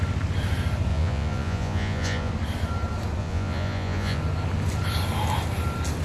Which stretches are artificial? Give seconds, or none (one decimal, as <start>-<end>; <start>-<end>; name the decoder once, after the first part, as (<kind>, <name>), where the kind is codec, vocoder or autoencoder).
0.9-2.3 (vocoder, Vocos); 3.2-4.2